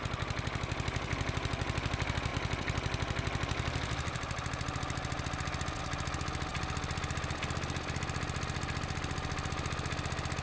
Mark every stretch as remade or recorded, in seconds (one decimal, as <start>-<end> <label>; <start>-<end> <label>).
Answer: 0.0-10.4 recorded